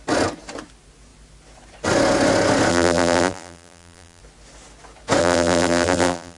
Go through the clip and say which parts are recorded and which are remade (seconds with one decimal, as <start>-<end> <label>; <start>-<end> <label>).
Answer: 0.0-2.7 recorded; 2.7-4.2 remade; 4.2-5.2 recorded; 5.2-6.4 remade